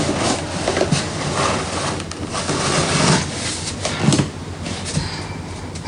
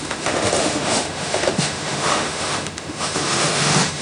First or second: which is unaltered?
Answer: first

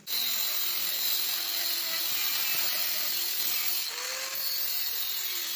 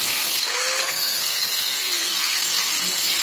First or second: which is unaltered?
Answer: first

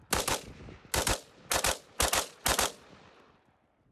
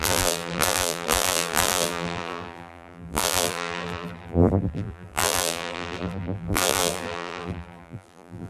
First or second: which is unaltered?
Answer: first